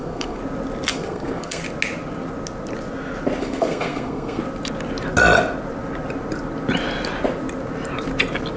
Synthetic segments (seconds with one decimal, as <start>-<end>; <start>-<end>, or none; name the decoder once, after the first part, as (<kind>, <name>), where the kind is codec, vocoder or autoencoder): 0.0-0.4 (codec, SNAC); 0.9-1.6; 3.4-4.4